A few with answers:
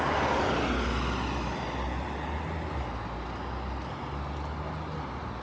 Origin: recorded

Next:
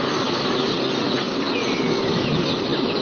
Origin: recorded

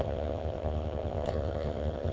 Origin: remade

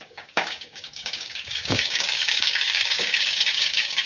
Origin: remade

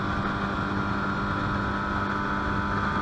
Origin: recorded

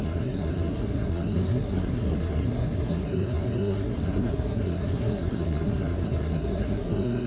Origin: remade